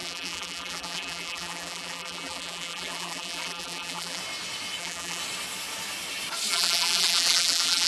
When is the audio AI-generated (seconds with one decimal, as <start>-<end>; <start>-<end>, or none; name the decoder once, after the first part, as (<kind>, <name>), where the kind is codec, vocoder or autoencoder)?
0.0-4.2 (vocoder, BigVGAN v2); 4.8-5.2; 6.5-7.9